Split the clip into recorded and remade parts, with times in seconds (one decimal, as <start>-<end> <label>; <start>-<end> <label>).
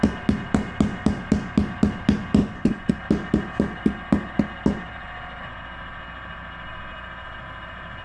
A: 0.0-2.4 recorded; 2.4-3.0 remade; 3.0-8.0 recorded